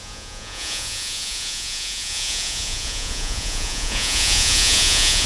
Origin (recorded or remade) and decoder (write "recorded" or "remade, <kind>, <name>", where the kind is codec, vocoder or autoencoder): remade, vocoder, Vocos